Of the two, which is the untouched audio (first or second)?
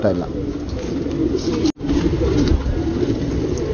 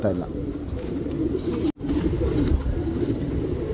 first